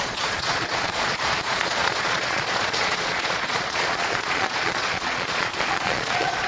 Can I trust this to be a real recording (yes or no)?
no